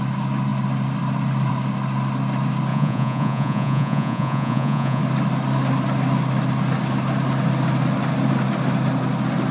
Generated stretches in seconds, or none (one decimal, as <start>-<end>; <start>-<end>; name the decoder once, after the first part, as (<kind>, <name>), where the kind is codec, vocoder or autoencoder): 2.7-5.0 (vocoder, Vocos)